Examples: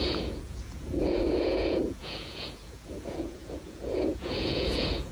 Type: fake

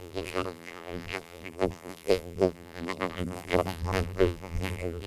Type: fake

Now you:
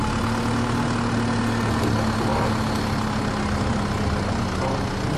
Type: real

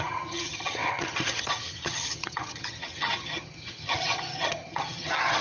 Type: fake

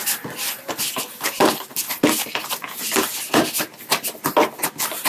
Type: real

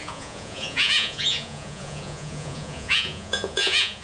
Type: fake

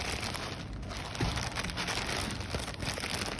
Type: real